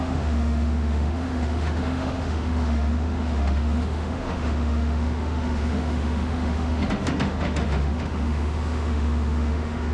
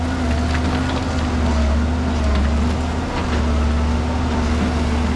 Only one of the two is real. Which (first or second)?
second